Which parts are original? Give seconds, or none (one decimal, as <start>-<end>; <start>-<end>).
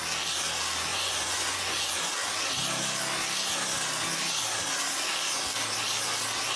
0.0-0.9; 2.1-6.6